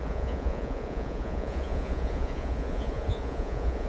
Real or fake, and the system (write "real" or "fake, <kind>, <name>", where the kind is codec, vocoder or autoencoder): fake, vocoder, Vocos